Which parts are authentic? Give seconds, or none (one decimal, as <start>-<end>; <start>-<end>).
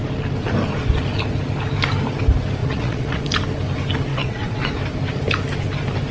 0.0-2.6; 3.2-4.1; 4.7-6.1